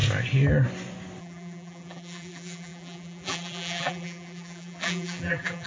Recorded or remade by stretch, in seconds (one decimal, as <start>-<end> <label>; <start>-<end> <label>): 0.0-1.2 recorded; 1.2-5.7 remade